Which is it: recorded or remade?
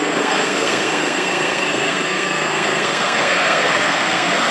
remade